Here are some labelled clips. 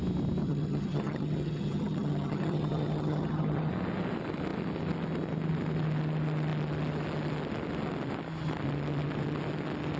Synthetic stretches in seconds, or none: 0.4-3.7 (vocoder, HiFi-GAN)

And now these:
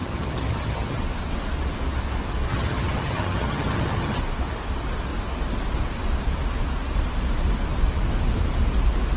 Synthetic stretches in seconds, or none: 0.0-1.0 (vocoder, HiFi-GAN); 2.5-4.2